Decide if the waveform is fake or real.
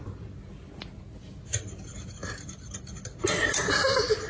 real